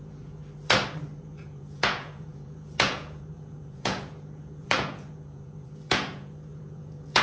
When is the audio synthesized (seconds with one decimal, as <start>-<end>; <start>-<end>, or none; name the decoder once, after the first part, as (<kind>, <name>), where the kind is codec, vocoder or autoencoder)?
0.0-0.4 (vocoder, Vocos); 1.2-7.2